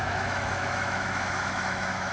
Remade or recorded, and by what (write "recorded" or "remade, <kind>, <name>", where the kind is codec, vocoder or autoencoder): remade, autoencoder, DAC-VAE